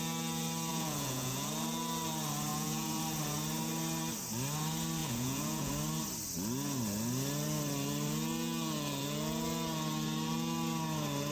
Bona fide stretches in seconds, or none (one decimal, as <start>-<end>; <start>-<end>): 0.0-0.7; 1.5-2.5; 3.0-5.0; 5.7-11.3